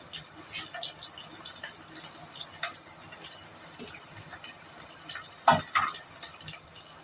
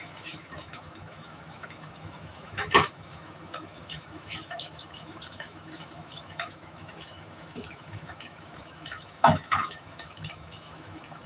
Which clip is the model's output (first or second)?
second